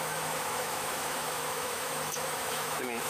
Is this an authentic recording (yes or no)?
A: no